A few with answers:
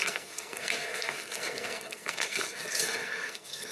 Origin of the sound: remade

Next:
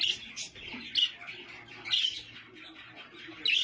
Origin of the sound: recorded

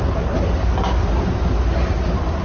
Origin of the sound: recorded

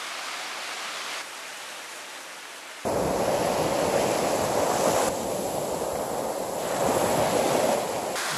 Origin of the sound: recorded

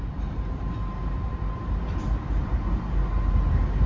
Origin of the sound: recorded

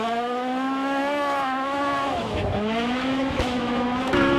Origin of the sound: remade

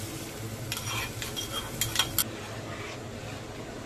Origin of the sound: recorded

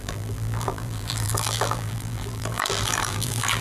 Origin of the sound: remade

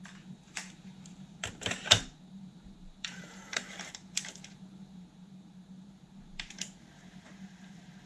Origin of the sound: remade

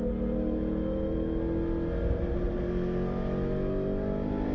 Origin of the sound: recorded